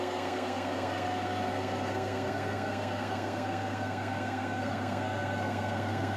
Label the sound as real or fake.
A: fake